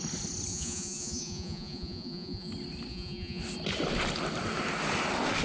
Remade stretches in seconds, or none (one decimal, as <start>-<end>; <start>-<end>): 0.5-2.5; 2.9-3.4